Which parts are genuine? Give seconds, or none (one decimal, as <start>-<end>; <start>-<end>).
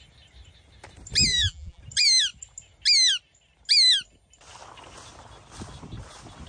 0.0-1.3; 1.8-6.5